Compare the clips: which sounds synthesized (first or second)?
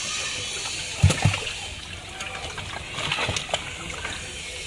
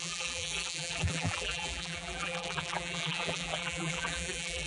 second